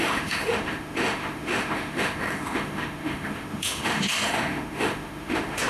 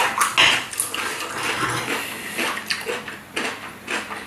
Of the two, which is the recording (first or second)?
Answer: second